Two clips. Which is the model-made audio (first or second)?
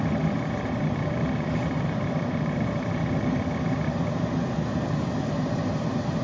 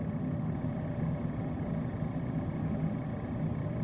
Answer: first